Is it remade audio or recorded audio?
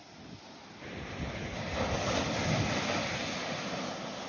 recorded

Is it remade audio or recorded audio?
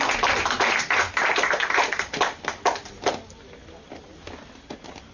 recorded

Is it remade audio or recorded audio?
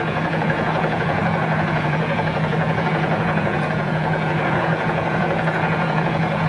remade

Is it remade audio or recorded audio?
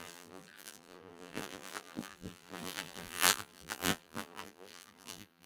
remade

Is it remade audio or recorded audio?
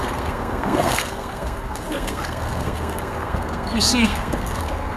remade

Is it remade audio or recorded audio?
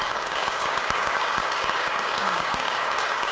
remade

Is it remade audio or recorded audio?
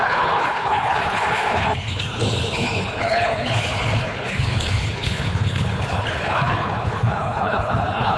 remade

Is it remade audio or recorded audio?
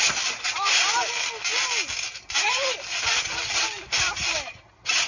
recorded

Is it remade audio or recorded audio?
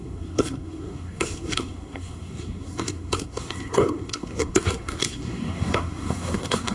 remade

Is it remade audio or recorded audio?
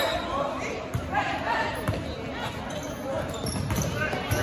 recorded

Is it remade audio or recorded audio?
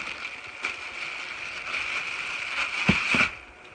recorded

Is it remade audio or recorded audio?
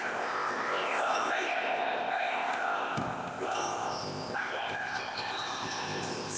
remade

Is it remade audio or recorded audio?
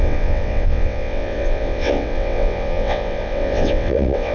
remade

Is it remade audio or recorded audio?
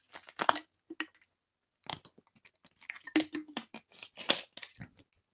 recorded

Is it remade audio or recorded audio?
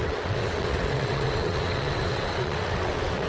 remade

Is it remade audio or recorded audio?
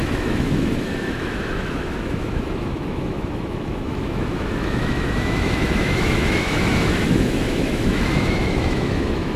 remade